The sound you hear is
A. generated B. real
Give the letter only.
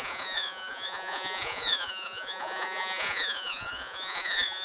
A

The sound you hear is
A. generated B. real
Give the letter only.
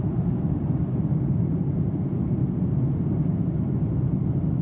B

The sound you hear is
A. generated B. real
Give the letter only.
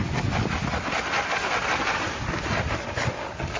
B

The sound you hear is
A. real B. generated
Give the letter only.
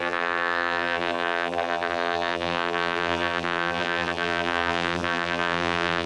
B